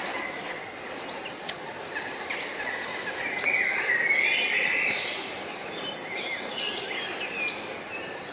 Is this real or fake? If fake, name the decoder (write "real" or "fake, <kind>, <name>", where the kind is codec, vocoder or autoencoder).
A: real